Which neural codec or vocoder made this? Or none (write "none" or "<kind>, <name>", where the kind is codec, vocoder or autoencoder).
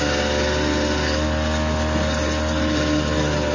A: none